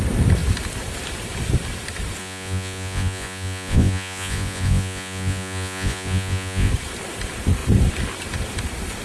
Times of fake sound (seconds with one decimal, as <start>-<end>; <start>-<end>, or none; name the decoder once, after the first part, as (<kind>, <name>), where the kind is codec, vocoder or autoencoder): 2.2-6.7 (vocoder, Vocos)